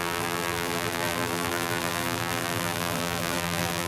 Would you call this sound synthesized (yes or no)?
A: yes